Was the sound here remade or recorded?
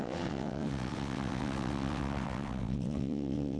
remade